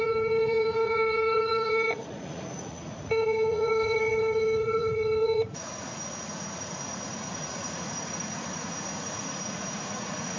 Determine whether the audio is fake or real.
fake